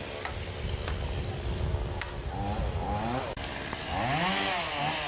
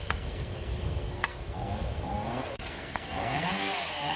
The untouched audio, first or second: first